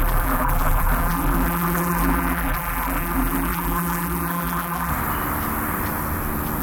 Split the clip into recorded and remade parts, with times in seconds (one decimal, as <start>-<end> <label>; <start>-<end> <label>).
0.0-4.9 remade; 4.9-6.6 recorded